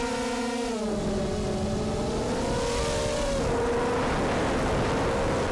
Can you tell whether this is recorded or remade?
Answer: recorded